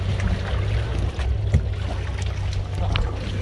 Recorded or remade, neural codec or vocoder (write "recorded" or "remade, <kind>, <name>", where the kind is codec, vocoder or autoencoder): recorded